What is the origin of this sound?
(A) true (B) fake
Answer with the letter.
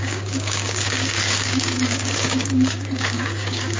B